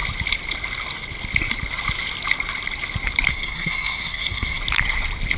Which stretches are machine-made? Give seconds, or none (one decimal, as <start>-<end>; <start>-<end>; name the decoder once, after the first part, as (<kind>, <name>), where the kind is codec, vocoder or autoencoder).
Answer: 3.3-4.6 (codec, SNAC)